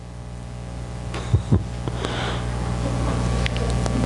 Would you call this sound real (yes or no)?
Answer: yes